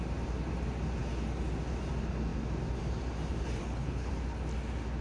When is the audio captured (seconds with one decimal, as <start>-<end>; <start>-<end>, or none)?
0.0-3.6; 4.1-5.0